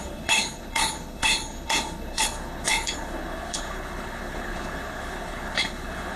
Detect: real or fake fake